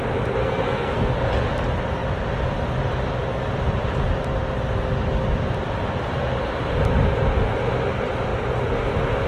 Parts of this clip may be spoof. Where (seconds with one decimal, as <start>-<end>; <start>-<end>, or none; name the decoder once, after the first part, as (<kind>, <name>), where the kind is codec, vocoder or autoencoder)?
0.4-1.1 (codec, SNAC)

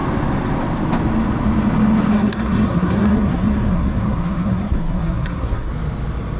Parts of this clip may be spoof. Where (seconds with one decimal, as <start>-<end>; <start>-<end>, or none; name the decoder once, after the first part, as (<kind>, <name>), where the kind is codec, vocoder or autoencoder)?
2.1-5.7 (codec, SNAC)

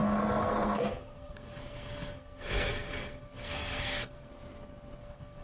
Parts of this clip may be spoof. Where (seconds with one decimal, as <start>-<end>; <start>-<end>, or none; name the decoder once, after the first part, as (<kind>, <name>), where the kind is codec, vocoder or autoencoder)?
0.0-4.3 (codec, SNAC); 5.0-5.4

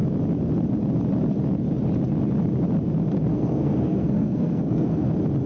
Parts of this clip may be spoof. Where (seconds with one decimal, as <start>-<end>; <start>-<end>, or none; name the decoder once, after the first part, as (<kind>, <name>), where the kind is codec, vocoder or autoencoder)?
3.3-5.1 (codec, SNAC)

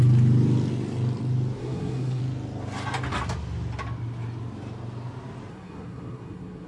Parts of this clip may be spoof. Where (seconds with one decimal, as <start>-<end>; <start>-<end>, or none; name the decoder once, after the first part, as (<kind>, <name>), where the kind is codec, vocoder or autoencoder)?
1.6-2.2 (codec, SNAC); 5.5-6.7

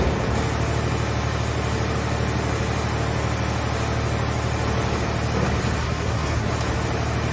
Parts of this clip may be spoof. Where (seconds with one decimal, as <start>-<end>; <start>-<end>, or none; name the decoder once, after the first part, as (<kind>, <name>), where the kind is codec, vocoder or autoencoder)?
5.8-6.5 (codec, SNAC)

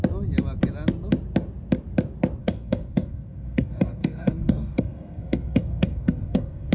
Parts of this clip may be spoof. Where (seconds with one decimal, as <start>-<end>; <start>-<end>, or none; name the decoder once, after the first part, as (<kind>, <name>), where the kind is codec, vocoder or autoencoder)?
2.4-6.7 (codec, SNAC)

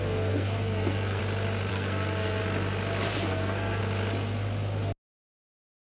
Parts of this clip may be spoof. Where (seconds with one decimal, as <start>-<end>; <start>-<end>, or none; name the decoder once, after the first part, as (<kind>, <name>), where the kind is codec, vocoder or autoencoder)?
0.0-1.2 (codec, SNAC); 1.7-2.4; 3.2-3.8; 5.2-5.9